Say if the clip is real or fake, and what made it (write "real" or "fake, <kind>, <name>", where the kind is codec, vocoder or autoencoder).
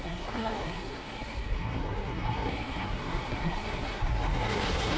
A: fake, codec, SNAC